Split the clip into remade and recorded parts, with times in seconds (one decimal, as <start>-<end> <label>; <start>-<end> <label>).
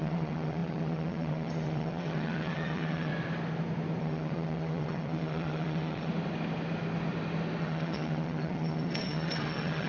0.0-3.1 remade; 3.1-4.0 recorded; 4.0-6.1 remade; 6.1-7.6 recorded; 7.6-9.9 remade